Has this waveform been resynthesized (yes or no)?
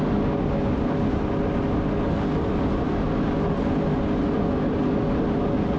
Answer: no